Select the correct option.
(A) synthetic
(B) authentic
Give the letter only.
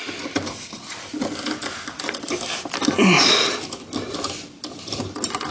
B